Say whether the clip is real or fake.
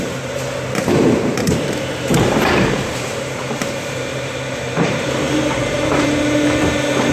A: fake